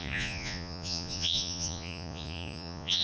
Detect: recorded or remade remade